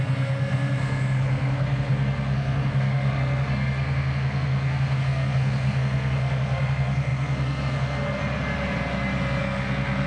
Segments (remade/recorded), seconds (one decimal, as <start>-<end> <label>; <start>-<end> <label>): 0.0-8.2 remade; 8.2-9.4 recorded; 9.4-10.1 remade

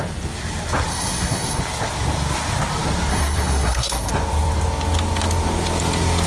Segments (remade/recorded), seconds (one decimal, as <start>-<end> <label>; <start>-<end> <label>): 0.0-0.9 recorded; 0.9-1.6 remade; 1.6-3.1 recorded; 3.1-4.1 remade; 4.1-6.3 recorded

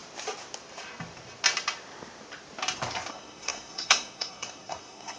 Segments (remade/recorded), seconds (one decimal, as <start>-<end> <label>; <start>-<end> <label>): 0.0-3.1 recorded; 3.1-5.2 remade

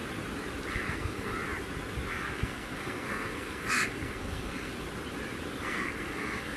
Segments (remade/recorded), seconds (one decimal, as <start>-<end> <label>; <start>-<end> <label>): 0.0-0.7 recorded; 0.7-1.3 remade; 1.3-2.1 recorded; 2.1-4.7 remade; 4.7-5.6 recorded; 5.6-6.6 remade